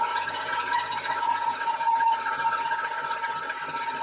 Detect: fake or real real